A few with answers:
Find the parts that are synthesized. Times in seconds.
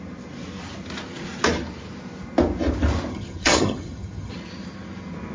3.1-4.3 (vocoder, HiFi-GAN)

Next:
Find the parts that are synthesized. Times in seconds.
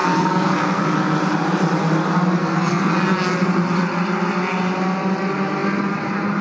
0.0-0.8 (codec, SNAC); 2.4-2.9